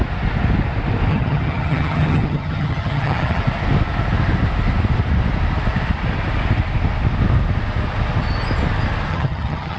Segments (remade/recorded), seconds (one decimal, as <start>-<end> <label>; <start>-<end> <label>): 0.0-1.1 recorded; 1.1-3.4 remade; 3.4-9.1 recorded; 9.1-9.8 remade